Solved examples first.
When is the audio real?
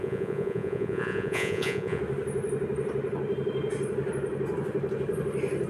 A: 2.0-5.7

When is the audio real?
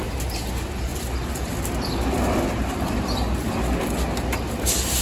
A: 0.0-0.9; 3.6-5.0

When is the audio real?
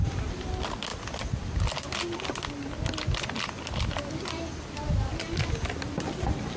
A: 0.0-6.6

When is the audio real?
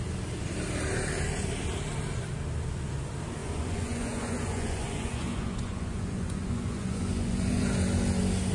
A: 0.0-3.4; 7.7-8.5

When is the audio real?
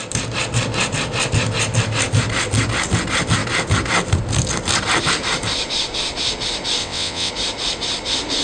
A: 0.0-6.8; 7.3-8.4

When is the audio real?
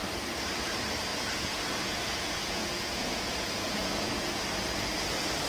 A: 0.0-1.1; 4.4-5.5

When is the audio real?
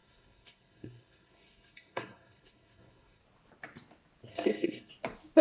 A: 3.2-4.3; 4.9-5.4